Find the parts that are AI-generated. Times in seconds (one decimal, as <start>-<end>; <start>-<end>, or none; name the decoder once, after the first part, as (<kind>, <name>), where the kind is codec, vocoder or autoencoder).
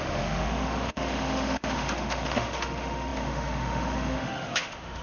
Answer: 0.0-5.0 (autoencoder, DAC-VAE)